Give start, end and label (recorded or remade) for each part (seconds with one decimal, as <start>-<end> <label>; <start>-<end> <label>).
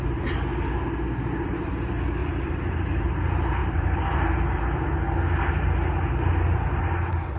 0.0-2.2 recorded; 2.2-3.1 remade; 3.1-3.6 recorded; 3.6-4.6 remade; 4.6-7.4 recorded